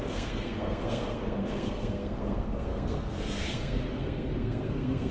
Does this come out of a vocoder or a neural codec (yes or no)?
yes